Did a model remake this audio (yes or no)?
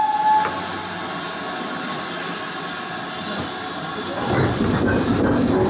no